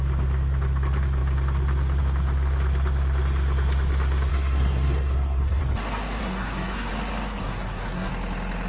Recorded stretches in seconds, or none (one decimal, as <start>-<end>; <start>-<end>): 0.0-4.3; 5.6-6.2; 6.9-7.4; 8.1-8.7